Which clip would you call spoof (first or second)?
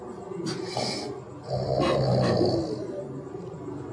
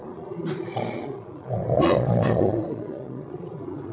second